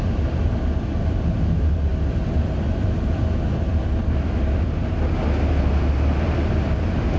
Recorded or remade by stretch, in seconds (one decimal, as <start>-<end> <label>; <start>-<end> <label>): 0.0-7.2 recorded